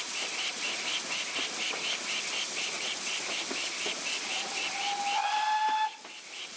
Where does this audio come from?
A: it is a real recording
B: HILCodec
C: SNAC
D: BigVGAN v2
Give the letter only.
A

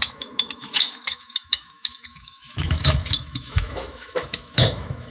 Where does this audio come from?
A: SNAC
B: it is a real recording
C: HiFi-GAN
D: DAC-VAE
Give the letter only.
D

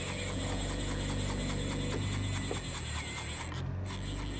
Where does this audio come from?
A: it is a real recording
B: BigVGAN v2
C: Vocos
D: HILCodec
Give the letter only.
A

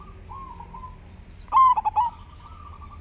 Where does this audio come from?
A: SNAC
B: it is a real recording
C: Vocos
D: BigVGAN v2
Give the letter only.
B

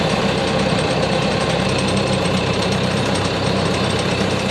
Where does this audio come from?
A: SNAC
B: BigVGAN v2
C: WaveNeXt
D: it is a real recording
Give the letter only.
B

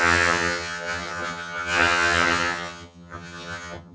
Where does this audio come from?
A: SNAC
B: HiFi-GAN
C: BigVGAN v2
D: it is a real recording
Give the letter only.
B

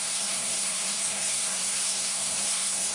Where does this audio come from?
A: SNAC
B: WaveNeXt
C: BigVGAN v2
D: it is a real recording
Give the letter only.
A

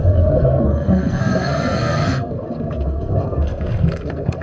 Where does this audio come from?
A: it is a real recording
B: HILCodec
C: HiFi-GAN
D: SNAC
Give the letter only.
D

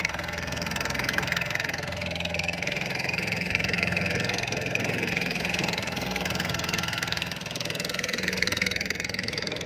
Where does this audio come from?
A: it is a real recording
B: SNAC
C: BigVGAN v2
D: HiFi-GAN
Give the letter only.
B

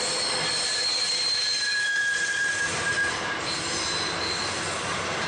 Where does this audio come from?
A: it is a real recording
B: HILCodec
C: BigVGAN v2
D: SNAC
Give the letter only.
A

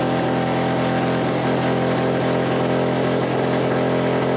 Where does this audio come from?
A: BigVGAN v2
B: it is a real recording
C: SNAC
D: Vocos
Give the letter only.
B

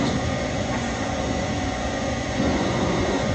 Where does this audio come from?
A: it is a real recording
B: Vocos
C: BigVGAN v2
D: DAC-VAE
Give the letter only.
B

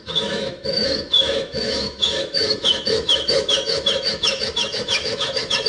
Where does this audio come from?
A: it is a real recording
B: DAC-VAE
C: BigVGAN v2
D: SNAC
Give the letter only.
B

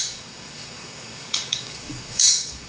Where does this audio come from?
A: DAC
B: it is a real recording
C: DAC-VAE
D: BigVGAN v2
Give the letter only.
A